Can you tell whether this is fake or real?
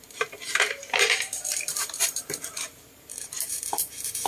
fake